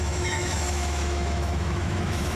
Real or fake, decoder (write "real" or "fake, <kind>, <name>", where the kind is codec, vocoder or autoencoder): fake, autoencoder, DAC-VAE